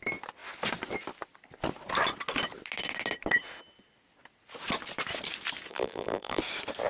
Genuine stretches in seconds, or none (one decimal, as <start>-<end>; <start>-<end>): 0.0-5.7; 6.4-6.9

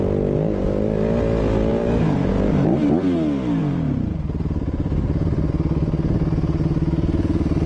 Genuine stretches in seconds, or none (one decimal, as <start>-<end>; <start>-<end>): 0.0-1.7; 2.3-7.7

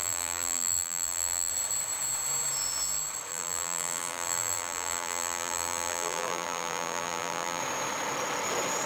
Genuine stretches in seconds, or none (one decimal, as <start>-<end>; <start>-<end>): 1.5-3.3; 7.6-8.9

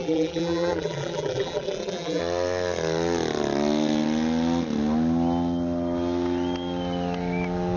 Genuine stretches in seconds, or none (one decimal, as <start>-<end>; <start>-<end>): 2.2-7.8

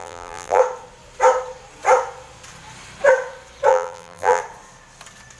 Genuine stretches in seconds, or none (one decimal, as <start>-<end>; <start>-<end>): 0.6-3.7; 4.4-5.4

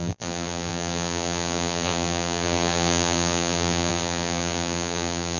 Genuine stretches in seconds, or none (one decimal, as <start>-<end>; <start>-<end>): none